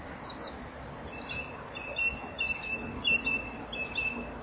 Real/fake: real